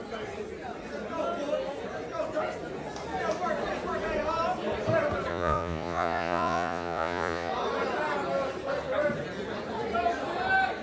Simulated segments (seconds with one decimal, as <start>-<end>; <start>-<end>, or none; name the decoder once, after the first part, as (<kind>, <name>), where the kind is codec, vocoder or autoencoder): 5.3-7.5 (vocoder, Vocos)